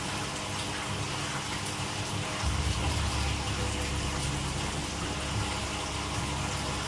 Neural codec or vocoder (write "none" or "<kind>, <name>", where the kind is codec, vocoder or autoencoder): none